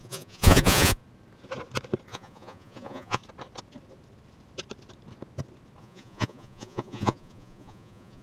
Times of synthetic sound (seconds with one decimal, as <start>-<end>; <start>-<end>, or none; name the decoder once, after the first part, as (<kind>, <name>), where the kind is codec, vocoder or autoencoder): 0.0-1.0 (vocoder, Vocos); 2.1-3.2; 5.8-8.2